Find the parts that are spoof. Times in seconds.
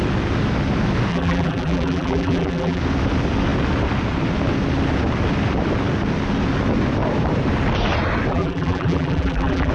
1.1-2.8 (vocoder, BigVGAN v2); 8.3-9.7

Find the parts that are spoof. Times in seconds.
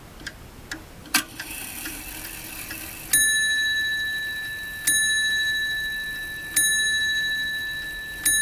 1.0-2.0 (vocoder, BigVGAN v2)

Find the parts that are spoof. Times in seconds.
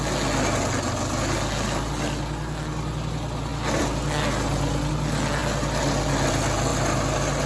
none